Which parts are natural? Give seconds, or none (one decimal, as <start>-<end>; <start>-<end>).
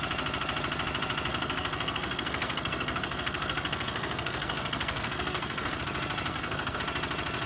0.0-1.3; 5.8-6.3; 6.8-7.5